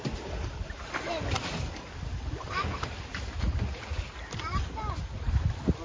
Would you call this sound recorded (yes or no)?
yes